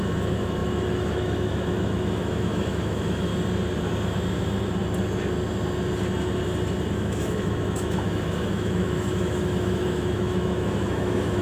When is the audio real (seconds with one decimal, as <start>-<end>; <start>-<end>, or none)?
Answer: 3.3-6.9

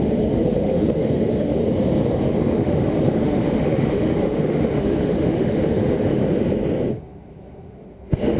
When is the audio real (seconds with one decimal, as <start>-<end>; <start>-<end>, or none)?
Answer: 1.6-2.2; 6.2-6.9

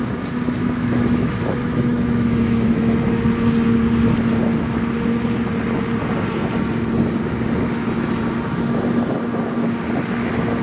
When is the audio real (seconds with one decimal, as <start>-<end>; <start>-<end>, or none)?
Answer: 0.0-0.6; 3.0-10.6

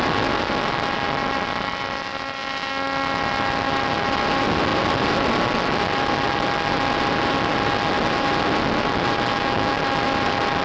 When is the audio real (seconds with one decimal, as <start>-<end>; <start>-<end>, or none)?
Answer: 0.0-9.3; 9.8-10.6

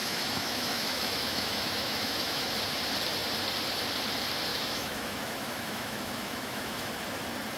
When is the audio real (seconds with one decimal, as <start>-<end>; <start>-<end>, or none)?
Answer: 2.5-4.5; 6.9-7.6

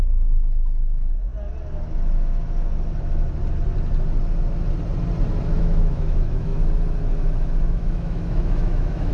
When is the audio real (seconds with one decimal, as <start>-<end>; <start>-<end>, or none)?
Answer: 1.3-5.6; 6.5-7.7

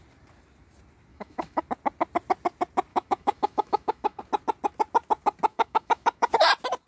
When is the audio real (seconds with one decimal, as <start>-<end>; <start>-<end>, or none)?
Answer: 0.0-1.1; 1.6-2.9; 4.2-5.5; 6.3-6.9